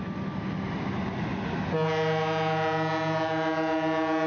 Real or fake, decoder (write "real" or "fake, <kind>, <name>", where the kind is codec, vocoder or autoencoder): real